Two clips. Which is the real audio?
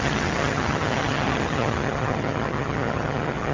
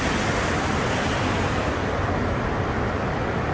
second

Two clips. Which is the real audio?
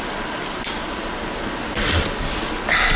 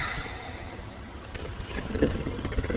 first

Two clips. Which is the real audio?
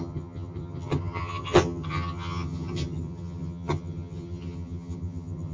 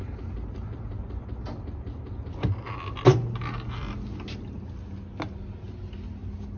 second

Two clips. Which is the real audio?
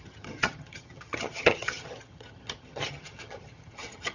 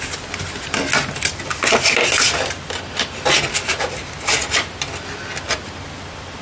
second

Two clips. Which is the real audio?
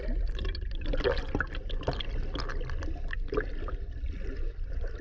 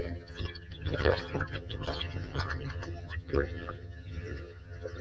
first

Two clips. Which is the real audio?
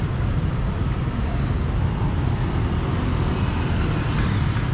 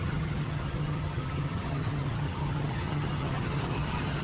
first